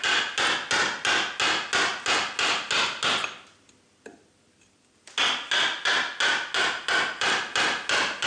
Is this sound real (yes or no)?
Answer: yes